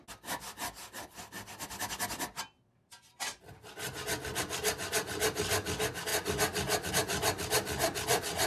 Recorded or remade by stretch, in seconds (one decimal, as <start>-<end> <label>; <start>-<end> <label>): 0.0-8.5 recorded